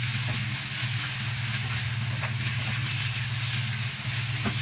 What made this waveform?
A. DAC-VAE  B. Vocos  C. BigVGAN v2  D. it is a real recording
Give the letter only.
D